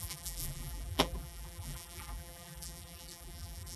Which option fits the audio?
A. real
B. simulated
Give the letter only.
B